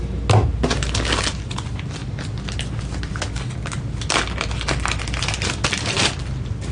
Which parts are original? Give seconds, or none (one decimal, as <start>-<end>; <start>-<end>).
0.0-6.7